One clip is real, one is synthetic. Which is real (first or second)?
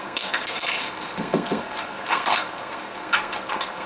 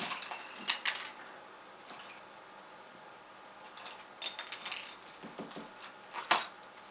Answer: second